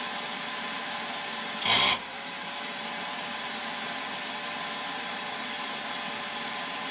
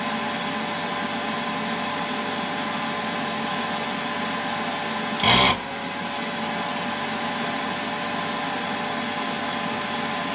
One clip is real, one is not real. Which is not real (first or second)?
first